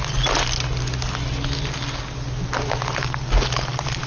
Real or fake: real